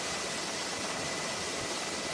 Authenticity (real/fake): real